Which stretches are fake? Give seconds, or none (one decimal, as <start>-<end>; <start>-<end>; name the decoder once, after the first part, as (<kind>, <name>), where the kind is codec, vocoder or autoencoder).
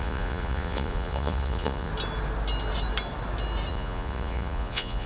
0.0-1.9 (vocoder, Vocos); 3.7-5.1